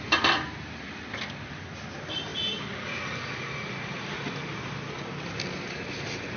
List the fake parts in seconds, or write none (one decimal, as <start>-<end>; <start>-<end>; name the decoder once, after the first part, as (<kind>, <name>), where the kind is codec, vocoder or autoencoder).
none